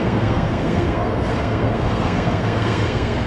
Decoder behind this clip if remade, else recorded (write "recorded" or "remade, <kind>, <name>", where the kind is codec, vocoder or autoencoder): remade, codec, SNAC